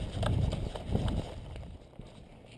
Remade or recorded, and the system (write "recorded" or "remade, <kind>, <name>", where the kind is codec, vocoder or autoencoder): recorded